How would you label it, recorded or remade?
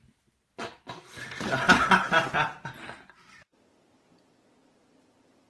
recorded